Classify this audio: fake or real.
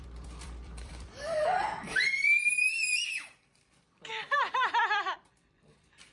fake